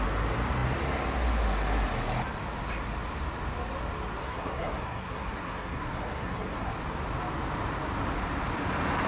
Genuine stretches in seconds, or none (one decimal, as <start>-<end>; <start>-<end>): 0.0-4.2; 6.7-9.1